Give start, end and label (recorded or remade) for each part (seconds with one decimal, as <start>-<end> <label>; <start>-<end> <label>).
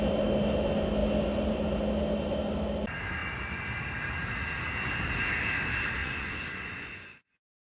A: 0.0-6.0 recorded; 6.0-7.6 remade